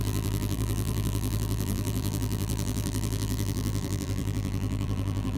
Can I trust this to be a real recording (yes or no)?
no